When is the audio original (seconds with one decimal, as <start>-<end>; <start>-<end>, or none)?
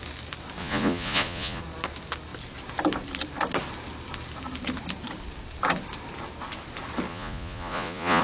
0.0-0.6; 1.6-7.1